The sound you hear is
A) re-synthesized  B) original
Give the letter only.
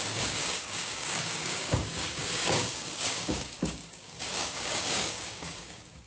A